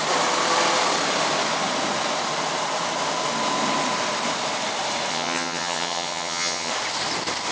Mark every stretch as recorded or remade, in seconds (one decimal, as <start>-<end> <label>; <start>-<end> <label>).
0.0-5.1 recorded; 5.1-6.7 remade; 6.7-7.5 recorded